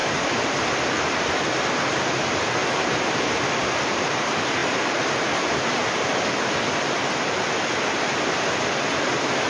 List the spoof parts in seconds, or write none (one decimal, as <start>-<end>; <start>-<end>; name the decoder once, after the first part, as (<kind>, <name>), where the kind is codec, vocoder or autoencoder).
0.0-0.5 (vocoder, BigVGAN v2); 2.6-4.0